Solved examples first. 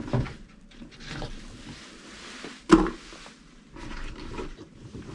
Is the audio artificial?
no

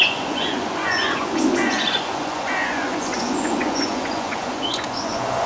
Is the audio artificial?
yes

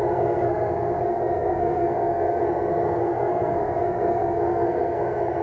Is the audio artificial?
yes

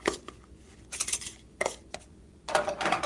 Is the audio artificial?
yes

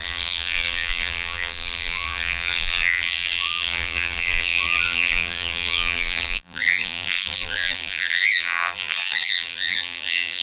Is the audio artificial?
yes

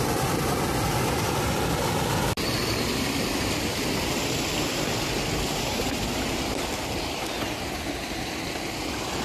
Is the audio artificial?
no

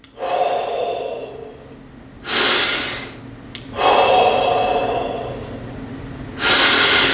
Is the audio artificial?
no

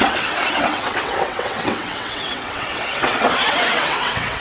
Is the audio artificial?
yes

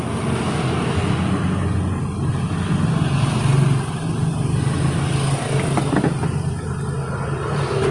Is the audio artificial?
no